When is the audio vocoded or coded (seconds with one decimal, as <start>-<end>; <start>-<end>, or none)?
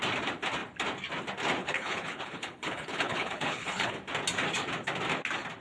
1.6-4.0